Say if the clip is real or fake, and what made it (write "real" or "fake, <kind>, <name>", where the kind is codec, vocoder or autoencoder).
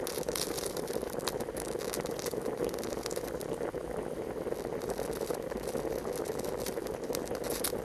real